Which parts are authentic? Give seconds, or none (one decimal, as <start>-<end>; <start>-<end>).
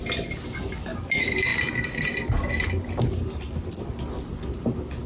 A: 0.0-5.1